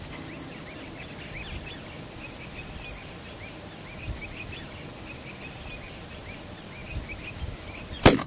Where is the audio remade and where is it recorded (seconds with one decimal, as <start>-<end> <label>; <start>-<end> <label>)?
0.0-8.3 recorded